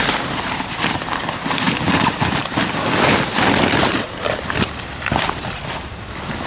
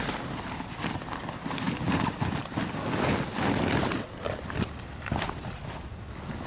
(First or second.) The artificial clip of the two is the first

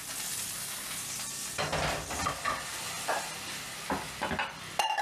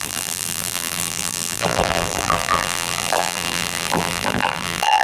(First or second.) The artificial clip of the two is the second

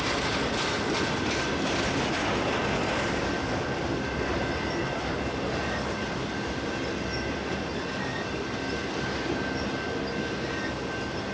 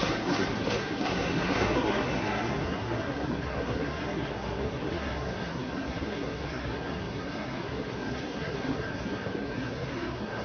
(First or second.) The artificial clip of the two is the second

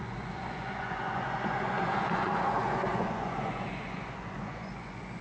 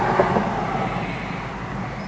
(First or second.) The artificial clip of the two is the first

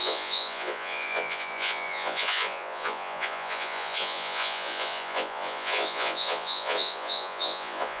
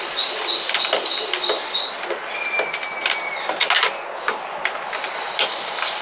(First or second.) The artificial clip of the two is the first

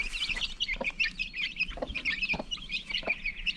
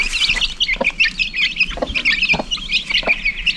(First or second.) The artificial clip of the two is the first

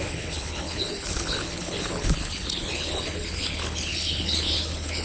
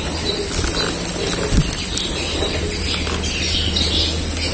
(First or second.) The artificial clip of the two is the first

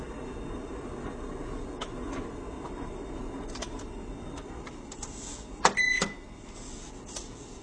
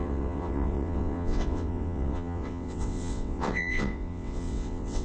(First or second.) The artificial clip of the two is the second